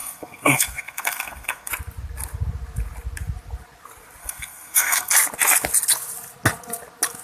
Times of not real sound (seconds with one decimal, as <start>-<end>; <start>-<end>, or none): 0.0-1.7; 4.2-5.1